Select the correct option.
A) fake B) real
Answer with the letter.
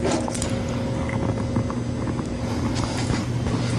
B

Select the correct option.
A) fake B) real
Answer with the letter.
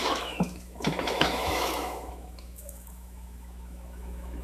A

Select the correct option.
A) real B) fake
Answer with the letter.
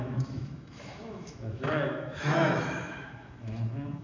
B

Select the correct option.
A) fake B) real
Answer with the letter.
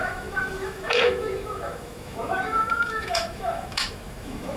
A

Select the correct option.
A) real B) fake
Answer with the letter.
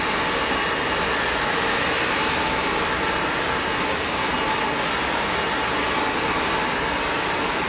A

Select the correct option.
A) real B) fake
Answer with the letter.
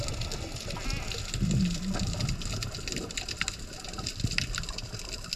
A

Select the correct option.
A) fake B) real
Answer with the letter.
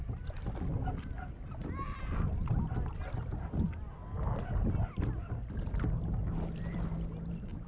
B